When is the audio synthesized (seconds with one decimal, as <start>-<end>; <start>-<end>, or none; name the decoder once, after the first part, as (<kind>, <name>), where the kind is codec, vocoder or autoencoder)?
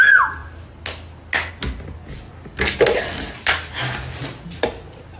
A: none